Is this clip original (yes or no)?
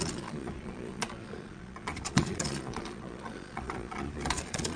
no